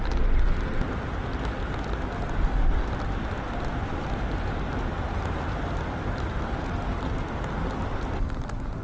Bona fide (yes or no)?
yes